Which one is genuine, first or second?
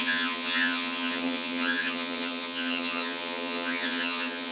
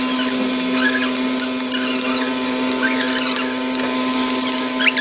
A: second